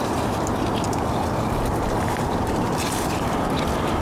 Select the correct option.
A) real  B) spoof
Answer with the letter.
A